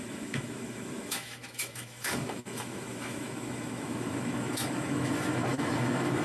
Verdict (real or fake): fake